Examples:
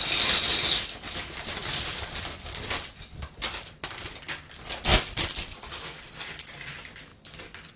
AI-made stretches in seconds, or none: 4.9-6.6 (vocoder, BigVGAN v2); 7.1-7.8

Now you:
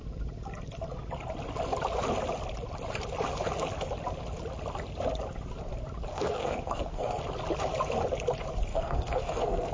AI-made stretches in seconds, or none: 6.1-7.2 (codec, SNAC); 8.7-9.7

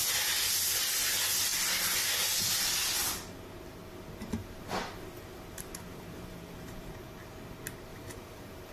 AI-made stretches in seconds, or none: 2.4-2.9 (vocoder, BigVGAN v2); 4.4-6.9; 7.9-8.7

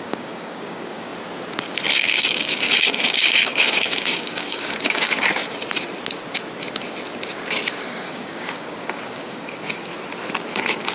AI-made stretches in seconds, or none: 0.0-1.1 (codec, DAC); 1.9-5.4; 7.9-9.9; 10.5-10.9

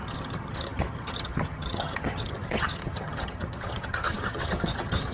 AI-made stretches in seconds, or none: 0.0-5.1 (vocoder, HiFi-GAN)

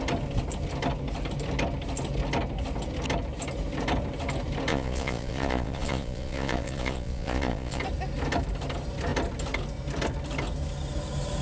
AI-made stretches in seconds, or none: 4.7-7.8 (vocoder, Vocos)